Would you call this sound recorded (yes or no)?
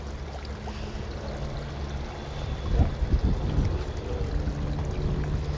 yes